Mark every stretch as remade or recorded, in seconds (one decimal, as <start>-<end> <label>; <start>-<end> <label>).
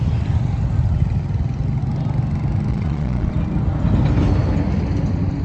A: 0.0-2.7 recorded; 2.7-3.3 remade; 3.3-5.4 recorded